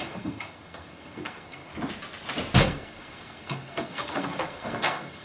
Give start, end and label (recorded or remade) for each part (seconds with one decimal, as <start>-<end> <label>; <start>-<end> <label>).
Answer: 0.0-1.7 remade; 1.7-2.6 recorded; 2.6-5.2 remade